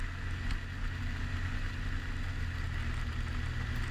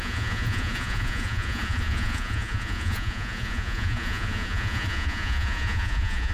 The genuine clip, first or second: first